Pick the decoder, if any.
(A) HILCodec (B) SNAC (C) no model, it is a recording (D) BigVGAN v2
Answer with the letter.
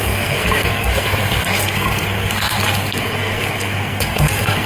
B